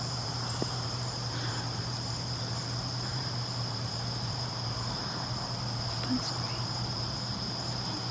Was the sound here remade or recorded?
remade